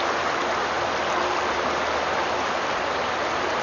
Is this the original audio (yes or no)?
yes